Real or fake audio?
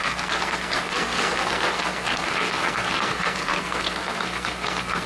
fake